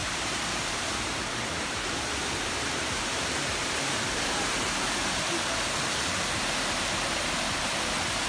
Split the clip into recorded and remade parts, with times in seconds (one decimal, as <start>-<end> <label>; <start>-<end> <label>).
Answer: 0.0-4.0 remade; 4.0-8.3 recorded